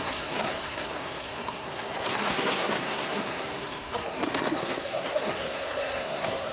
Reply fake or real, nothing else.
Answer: fake